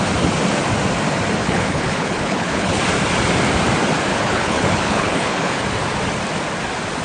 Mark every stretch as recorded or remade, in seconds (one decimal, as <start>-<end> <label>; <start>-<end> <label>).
0.0-1.4 recorded; 1.4-2.8 remade; 2.8-4.1 recorded; 4.1-5.6 remade; 5.6-7.0 recorded